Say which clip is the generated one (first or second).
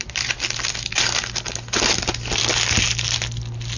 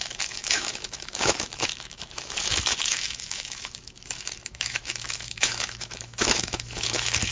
second